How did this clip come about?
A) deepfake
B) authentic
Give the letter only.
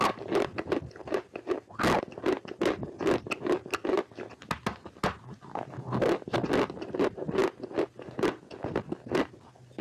B